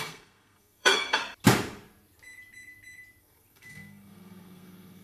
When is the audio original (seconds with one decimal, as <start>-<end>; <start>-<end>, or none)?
1.2-3.2